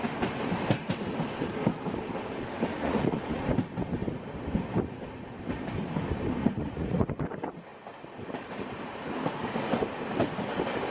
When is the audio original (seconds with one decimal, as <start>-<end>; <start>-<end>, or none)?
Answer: 0.0-2.7; 3.4-6.4; 7.2-10.9